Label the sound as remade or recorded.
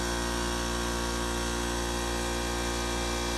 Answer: recorded